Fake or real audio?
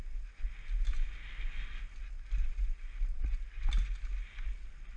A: real